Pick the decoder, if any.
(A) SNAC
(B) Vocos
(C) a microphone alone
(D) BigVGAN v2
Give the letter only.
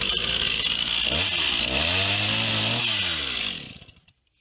C